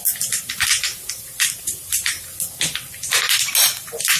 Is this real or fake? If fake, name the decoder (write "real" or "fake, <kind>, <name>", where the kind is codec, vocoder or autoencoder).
real